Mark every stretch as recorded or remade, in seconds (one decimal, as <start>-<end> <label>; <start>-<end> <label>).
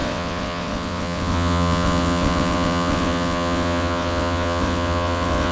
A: 0.0-5.5 remade